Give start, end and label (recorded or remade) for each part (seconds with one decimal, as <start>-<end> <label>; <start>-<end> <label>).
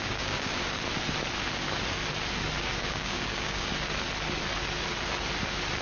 0.0-0.5 remade; 0.5-2.8 recorded; 2.8-3.7 remade; 3.7-5.8 recorded